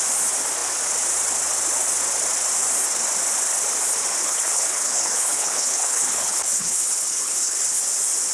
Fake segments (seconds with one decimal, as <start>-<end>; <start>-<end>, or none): 4.2-7.8